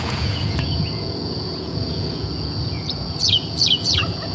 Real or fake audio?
fake